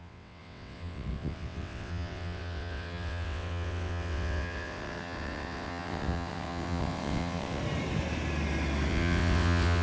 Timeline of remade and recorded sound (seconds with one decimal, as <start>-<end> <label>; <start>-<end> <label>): 0.0-7.6 remade; 7.6-8.9 recorded; 8.9-9.8 remade